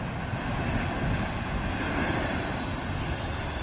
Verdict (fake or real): real